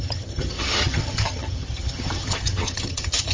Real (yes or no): no